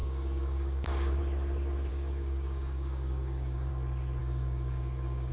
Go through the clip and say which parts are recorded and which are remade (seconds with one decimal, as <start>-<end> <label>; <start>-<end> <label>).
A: 0.0-1.2 remade; 1.2-1.9 recorded; 1.9-3.7 remade; 3.7-4.2 recorded; 4.2-5.3 remade